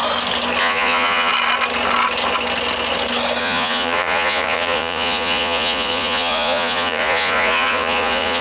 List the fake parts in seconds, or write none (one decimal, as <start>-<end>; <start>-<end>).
0.6-1.3; 3.4-8.4